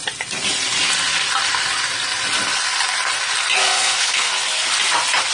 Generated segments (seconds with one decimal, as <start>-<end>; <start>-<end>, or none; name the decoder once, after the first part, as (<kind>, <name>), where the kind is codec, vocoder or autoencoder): 3.6-4.3 (codec, SNAC)